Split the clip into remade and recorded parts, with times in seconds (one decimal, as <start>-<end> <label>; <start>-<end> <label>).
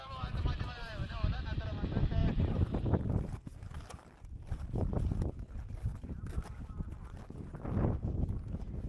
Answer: 0.0-2.2 recorded; 2.2-2.8 remade; 2.8-8.9 recorded